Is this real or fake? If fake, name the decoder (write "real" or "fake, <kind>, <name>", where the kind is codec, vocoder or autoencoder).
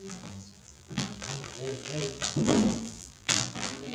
fake, vocoder, BigVGAN v2